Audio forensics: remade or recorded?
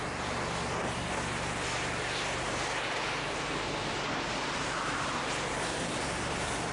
recorded